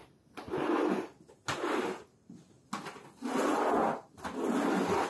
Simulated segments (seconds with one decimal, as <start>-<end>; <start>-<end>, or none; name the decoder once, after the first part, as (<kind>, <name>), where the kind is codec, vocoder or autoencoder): none